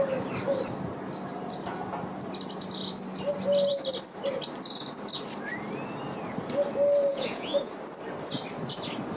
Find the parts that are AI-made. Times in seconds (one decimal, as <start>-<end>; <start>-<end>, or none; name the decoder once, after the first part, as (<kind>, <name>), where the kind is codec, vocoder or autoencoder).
7.1-7.7 (vocoder, Vocos)